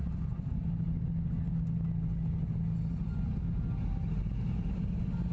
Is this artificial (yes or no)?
no